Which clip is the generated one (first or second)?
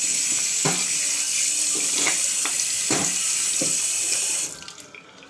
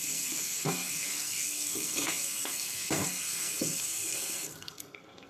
second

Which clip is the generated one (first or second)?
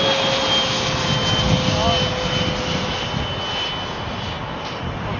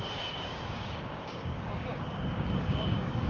second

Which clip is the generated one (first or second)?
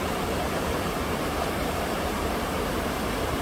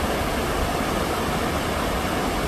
first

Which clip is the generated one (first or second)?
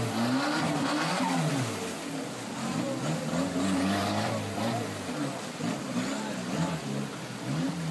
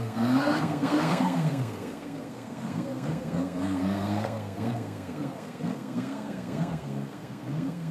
second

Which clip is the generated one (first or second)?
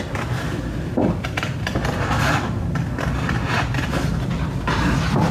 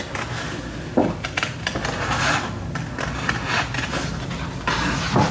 first